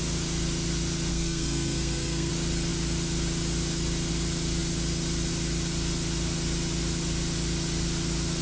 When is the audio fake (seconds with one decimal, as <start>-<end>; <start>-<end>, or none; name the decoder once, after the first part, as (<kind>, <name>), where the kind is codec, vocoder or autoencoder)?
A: 1.1-2.3 (codec, SNAC)